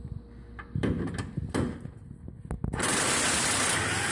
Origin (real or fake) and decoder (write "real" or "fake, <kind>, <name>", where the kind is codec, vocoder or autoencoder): real